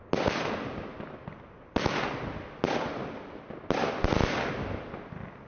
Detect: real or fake real